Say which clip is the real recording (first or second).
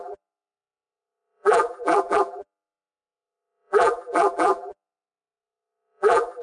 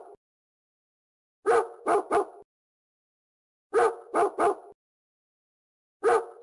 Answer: second